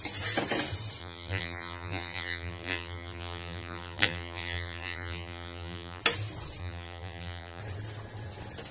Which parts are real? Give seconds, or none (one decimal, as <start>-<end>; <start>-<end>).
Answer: 0.0-1.0; 6.0-6.6; 7.6-8.7